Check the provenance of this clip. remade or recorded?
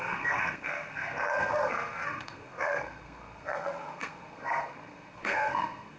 remade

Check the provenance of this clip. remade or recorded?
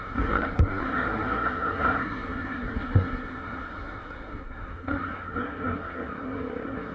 remade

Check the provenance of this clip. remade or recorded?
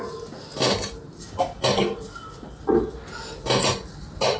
recorded